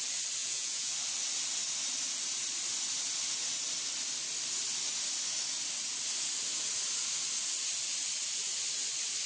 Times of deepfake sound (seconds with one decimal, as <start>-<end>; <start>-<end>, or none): 0.4-0.9